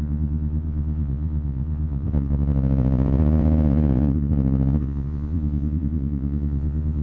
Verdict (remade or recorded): remade